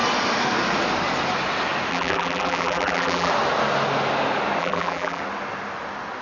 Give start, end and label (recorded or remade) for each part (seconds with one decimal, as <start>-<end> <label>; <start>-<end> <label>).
0.0-1.9 recorded; 1.9-3.3 remade; 3.3-4.6 recorded; 4.6-5.2 remade; 5.2-6.2 recorded